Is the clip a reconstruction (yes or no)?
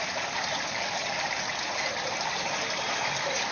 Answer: no